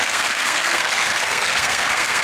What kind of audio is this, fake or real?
fake